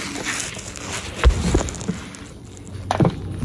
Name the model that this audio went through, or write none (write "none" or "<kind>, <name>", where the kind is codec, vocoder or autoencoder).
none